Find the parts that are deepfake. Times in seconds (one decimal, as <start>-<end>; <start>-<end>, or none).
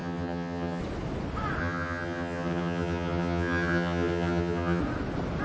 0.0-0.8; 1.6-4.8